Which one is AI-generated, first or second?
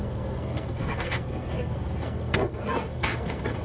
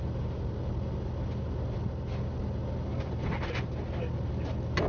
first